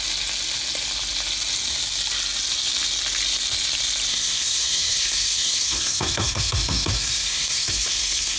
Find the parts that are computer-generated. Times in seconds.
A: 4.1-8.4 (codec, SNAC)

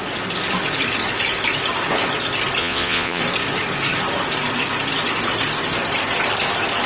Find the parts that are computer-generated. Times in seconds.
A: 2.6-3.2 (vocoder, Vocos)

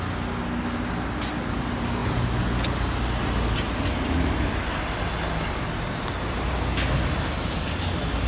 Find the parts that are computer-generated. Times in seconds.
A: none

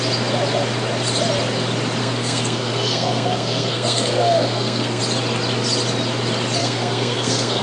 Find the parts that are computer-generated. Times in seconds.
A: 2.0-5.0 (codec, SNAC); 6.6-7.6

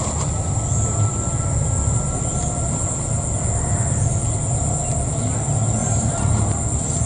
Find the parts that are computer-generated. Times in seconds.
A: 5.8-6.3 (vocoder, BigVGAN v2)

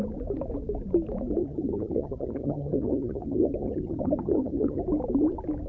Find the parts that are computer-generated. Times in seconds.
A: 1.4-4.8 (vocoder, HiFi-GAN)